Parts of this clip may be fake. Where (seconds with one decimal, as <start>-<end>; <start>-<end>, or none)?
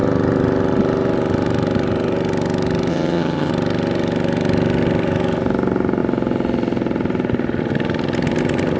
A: 2.9-3.5